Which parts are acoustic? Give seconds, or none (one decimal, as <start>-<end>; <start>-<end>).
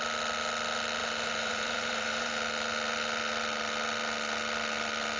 0.0-1.0; 2.3-5.2